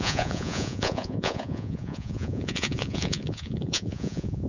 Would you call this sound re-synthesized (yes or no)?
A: yes